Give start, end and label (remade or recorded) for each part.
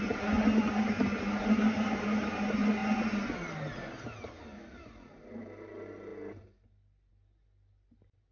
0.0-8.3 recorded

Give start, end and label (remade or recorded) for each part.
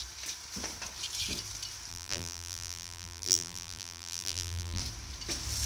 0.0-1.9 recorded; 1.9-4.8 remade; 4.8-5.7 recorded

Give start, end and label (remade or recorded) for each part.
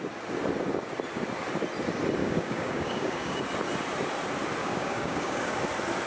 0.0-2.2 recorded; 2.2-3.4 remade; 3.4-4.6 recorded; 4.6-5.6 remade; 5.6-6.1 recorded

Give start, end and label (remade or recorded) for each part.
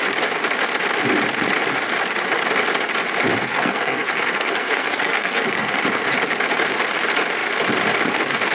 0.0-3.4 recorded; 3.4-5.7 remade; 5.7-8.5 recorded